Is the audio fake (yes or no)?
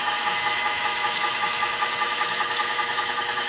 yes